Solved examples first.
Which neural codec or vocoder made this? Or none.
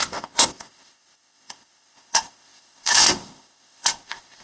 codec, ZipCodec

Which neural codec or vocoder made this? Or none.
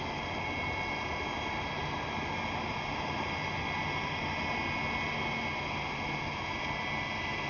none